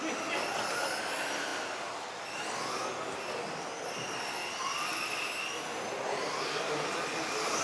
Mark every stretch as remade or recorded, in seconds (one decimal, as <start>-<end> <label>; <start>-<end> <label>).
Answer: 0.0-7.6 recorded